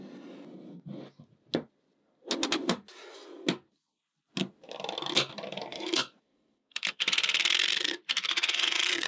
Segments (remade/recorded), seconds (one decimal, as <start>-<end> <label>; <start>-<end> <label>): 0.0-5.7 recorded; 5.7-7.0 remade; 7.0-8.2 recorded; 8.2-9.1 remade